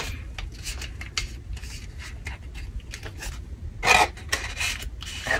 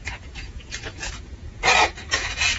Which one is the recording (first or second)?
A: first